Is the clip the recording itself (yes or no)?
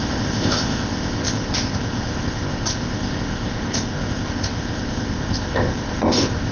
no